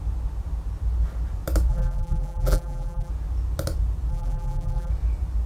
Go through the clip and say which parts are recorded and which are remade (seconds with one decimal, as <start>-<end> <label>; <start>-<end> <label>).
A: 0.0-1.7 recorded; 1.7-3.1 remade; 3.1-4.1 recorded; 4.1-4.9 remade; 4.9-5.5 recorded